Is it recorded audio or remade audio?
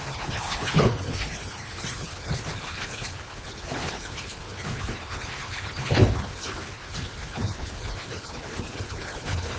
remade